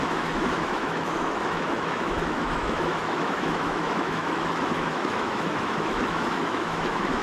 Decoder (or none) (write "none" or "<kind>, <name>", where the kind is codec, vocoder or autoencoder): autoencoder, DAC-VAE